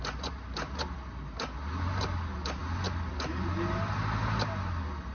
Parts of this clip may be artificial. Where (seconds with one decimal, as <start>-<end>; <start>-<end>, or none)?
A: none